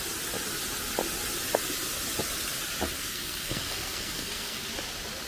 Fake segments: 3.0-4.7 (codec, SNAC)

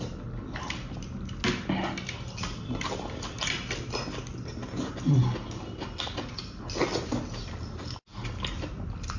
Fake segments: none